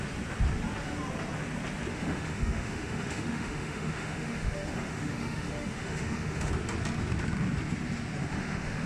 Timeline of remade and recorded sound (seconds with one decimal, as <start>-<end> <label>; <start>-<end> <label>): 0.0-1.9 recorded; 1.9-6.5 remade; 6.5-8.2 recorded; 8.2-8.9 remade